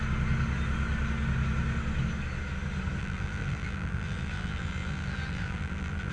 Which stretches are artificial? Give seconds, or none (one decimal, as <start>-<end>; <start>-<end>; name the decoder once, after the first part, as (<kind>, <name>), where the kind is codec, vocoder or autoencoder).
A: 3.0-6.1 (vocoder, BigVGAN v2)